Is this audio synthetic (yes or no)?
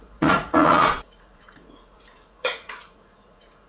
yes